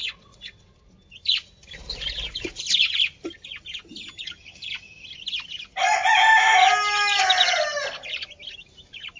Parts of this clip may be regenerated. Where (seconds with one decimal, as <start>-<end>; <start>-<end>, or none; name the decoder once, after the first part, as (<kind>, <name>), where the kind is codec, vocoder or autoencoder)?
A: 0.0-0.7 (vocoder, WaveNeXt)